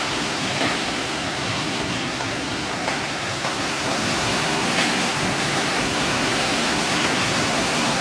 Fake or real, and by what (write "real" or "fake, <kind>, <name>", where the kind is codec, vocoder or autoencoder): fake, codec, SNAC